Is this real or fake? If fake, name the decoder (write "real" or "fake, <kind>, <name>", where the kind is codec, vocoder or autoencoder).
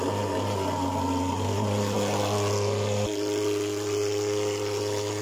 real